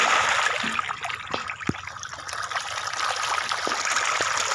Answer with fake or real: real